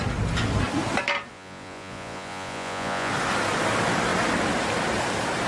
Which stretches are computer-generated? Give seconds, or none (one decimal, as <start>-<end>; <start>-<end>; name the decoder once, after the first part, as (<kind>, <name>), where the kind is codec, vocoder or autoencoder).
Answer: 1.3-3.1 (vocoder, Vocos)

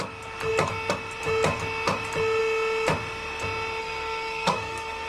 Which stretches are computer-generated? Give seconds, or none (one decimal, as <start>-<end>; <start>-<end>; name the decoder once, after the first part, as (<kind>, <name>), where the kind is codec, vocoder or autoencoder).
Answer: 3.8-5.1 (codec, SNAC)

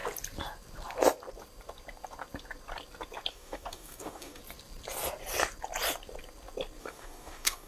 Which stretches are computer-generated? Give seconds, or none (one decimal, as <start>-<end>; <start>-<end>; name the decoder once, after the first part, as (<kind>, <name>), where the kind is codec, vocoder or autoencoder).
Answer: 3.3-4.4 (codec, DAC); 6.8-7.7

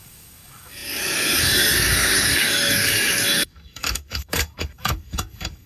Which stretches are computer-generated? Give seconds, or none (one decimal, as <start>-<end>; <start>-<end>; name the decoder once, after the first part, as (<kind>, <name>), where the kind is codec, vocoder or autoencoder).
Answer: 0.0-5.7 (codec, DAC)

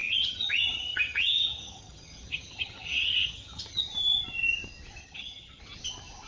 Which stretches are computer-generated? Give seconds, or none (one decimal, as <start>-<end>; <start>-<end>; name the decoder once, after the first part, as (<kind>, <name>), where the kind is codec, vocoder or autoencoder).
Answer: 0.0-3.8 (vocoder, HiFi-GAN); 5.0-5.6

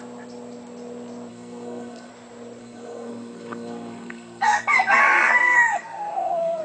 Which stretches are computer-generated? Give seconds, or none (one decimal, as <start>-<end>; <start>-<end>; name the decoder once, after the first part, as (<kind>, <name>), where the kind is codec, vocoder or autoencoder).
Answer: 1.3-2.1 (codec, SNAC); 2.6-6.6

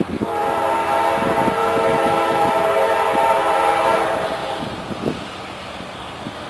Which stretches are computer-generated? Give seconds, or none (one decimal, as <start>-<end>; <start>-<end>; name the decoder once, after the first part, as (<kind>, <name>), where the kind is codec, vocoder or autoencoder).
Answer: 1.6-2.5 (autoencoder, DAC-VAE)

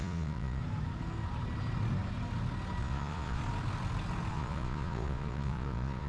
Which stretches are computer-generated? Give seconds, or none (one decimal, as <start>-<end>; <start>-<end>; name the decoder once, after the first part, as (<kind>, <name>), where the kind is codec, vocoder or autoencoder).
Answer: 0.0-0.6 (vocoder, Vocos); 2.8-3.4; 4.3-6.1